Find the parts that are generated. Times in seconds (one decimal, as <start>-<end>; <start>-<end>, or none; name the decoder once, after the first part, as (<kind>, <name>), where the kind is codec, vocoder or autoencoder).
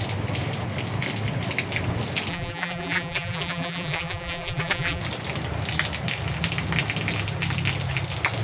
2.3-5.0 (vocoder, BigVGAN v2)